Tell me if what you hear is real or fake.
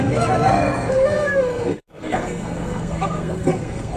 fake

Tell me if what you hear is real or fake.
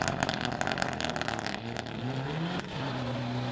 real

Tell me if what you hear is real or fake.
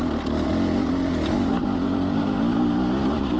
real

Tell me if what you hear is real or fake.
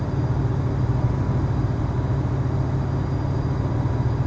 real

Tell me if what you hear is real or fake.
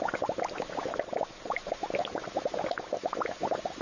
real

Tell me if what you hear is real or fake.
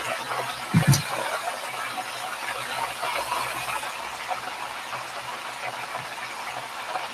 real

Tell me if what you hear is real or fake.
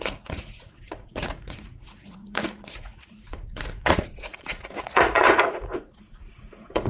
fake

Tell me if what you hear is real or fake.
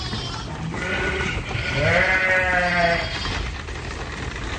real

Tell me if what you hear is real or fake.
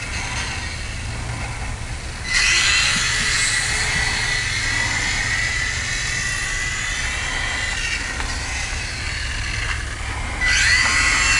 real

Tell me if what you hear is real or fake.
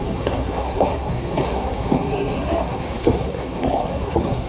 fake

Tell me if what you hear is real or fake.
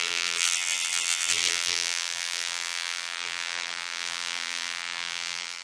fake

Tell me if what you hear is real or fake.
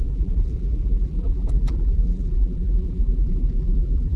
fake